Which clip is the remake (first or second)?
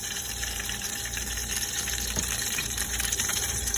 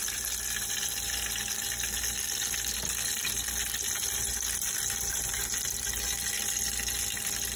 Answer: first